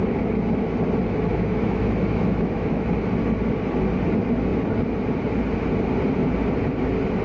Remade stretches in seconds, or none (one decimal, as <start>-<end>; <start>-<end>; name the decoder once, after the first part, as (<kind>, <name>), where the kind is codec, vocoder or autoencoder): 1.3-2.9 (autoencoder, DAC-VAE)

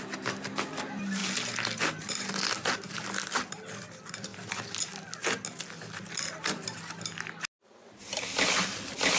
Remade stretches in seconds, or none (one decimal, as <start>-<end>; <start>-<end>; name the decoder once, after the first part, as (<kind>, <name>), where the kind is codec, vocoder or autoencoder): none

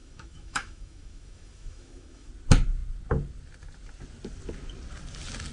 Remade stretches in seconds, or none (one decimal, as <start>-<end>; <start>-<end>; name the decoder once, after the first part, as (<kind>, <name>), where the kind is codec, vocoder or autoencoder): 0.0-2.3 (autoencoder, DAC-VAE)

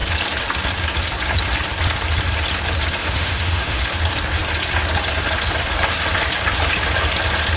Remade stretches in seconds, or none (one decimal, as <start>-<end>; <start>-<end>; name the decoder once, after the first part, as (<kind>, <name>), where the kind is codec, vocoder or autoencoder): 3.0-3.8 (autoencoder, DAC-VAE)

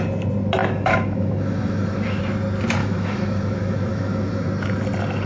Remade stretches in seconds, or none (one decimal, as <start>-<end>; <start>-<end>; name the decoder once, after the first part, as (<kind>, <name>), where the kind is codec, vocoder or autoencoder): 0.6-2.2 (autoencoder, DAC-VAE); 2.8-4.5